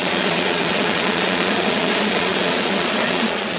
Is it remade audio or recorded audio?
remade